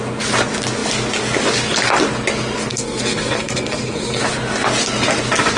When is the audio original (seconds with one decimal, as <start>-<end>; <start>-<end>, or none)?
0.0-2.7; 4.2-5.6